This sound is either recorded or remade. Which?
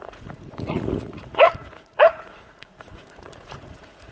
remade